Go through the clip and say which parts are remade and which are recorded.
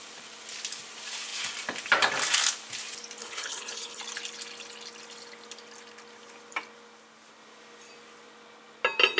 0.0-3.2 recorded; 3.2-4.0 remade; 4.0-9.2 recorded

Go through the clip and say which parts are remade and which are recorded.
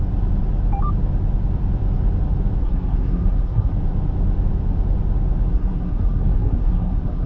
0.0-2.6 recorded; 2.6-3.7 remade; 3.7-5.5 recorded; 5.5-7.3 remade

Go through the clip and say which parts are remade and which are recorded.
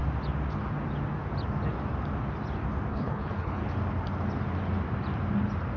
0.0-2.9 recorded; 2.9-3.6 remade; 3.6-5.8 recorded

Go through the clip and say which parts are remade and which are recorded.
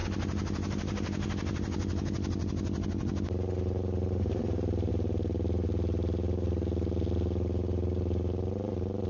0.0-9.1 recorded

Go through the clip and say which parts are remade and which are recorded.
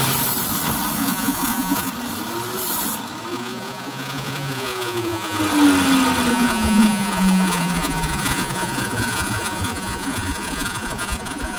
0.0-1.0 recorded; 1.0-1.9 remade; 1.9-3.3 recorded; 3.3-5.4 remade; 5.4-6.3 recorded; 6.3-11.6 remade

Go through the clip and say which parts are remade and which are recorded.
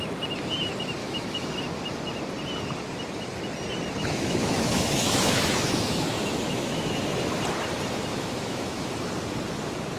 0.0-1.0 recorded; 1.0-1.6 remade; 1.6-4.0 recorded; 4.0-6.9 remade; 6.9-8.1 recorded; 8.1-8.9 remade; 8.9-10.0 recorded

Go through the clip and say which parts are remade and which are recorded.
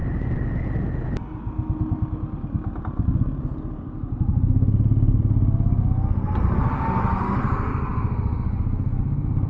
0.0-4.3 recorded; 4.3-5.2 remade; 5.2-9.5 recorded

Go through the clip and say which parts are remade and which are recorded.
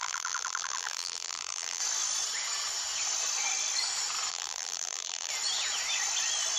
0.0-1.8 remade; 1.8-4.3 recorded; 4.3-5.3 remade; 5.3-6.6 recorded